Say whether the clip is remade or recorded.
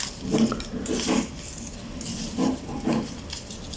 recorded